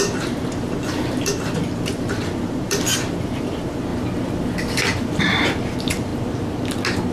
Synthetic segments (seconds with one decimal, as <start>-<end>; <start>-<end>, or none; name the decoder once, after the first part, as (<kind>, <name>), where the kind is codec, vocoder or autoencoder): 0.0-3.9 (vocoder, BigVGAN v2); 5.2-6.1